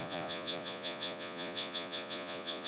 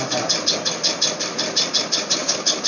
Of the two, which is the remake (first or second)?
first